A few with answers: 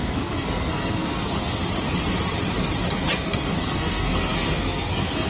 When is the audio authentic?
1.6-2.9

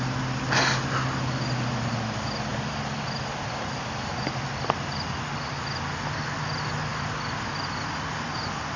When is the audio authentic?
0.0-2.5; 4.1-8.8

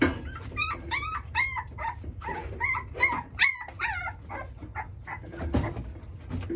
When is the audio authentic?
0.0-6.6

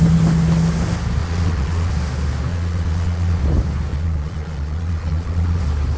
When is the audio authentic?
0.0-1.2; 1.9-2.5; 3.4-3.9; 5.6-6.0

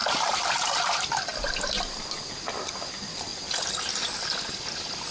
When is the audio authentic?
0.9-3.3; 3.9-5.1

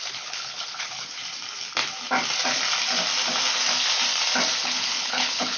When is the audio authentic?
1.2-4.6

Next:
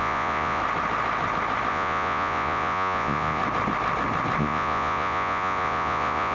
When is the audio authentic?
0.6-1.7; 3.4-4.4